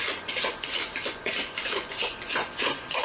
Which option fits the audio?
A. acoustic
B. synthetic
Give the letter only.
B